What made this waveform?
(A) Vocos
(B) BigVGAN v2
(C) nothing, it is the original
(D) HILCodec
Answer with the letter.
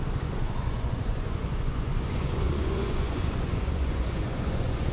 A